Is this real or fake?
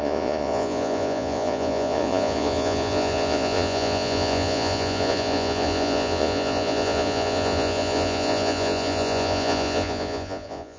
fake